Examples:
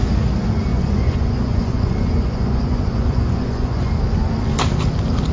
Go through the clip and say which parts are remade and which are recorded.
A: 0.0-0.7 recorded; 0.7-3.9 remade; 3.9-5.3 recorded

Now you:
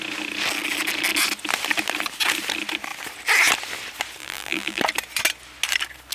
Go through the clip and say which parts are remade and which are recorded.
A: 0.0-4.2 recorded; 4.2-4.8 remade; 4.8-6.1 recorded